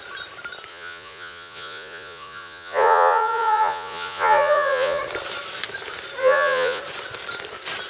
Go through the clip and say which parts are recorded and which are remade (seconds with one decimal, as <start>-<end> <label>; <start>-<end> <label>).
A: 0.0-0.7 recorded; 0.7-5.0 remade; 5.0-6.2 recorded; 6.2-6.8 remade; 6.8-7.9 recorded